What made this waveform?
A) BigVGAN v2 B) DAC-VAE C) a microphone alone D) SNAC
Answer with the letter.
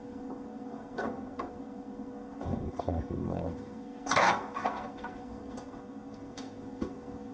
D